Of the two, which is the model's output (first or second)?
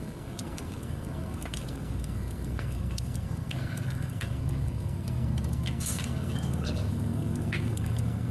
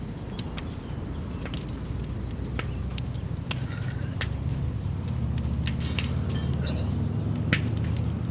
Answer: first